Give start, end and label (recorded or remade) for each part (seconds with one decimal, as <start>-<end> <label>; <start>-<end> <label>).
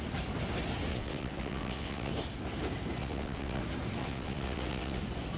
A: 0.0-0.9 recorded; 0.9-2.1 remade; 2.1-3.0 recorded; 3.0-3.6 remade; 3.6-4.0 recorded; 4.0-5.0 remade; 5.0-5.4 recorded